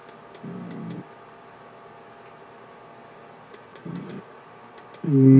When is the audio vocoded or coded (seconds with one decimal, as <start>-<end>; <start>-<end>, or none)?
3.7-4.5